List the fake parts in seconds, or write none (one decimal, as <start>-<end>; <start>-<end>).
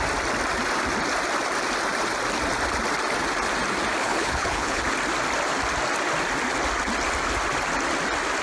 4.0-4.8